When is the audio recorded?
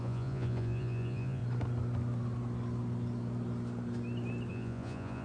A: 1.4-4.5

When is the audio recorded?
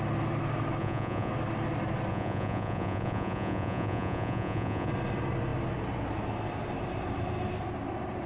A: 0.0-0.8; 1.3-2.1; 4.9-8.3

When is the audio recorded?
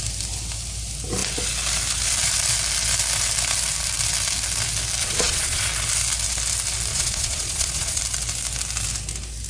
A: 0.0-5.0; 5.6-6.9; 8.0-9.5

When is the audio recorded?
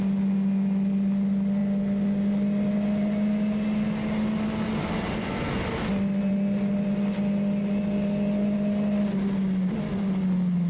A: 0.0-10.7